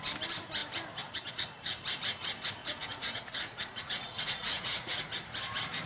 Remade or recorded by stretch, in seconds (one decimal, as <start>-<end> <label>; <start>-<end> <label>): 0.0-2.6 recorded; 2.6-5.1 remade; 5.1-5.9 recorded